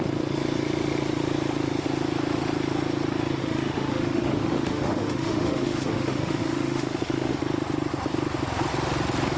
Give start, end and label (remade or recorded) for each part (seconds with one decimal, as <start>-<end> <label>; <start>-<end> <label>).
0.0-3.4 recorded; 3.4-7.3 remade; 7.3-9.4 recorded